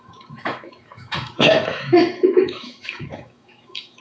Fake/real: fake